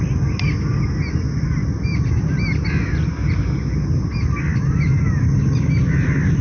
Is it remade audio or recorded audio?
recorded